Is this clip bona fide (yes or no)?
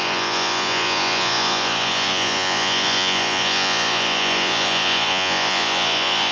no